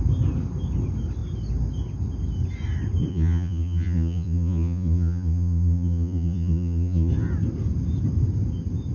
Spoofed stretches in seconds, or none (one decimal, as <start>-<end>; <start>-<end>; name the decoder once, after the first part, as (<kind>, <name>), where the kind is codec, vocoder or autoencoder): 3.1-7.1 (vocoder, Vocos)